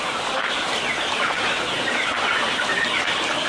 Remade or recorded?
recorded